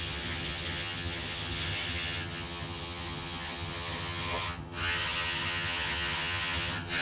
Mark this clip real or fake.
fake